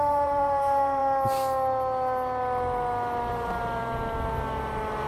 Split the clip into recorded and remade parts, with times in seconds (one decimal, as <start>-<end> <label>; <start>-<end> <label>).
0.0-1.0 remade; 1.0-3.3 recorded; 3.3-3.8 remade; 3.8-5.1 recorded